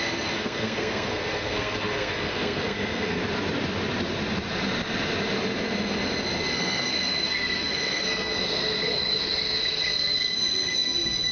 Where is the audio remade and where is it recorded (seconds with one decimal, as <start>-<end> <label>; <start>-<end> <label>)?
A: 0.0-3.2 remade; 3.2-6.5 recorded; 6.5-11.3 remade